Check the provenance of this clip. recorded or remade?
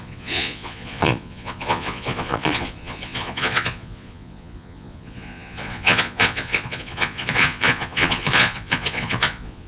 remade